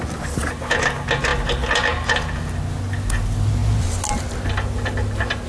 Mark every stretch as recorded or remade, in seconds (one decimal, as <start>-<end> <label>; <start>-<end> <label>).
0.0-5.5 recorded